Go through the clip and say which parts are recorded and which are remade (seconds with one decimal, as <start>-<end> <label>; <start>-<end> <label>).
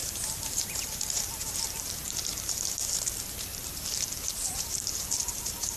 0.0-2.8 remade; 2.8-3.5 recorded; 3.5-5.8 remade